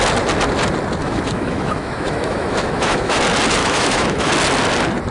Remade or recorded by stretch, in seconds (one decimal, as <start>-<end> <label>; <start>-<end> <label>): 0.0-1.0 recorded; 1.0-3.2 remade; 3.2-3.6 recorded; 3.6-4.3 remade; 4.3-5.1 recorded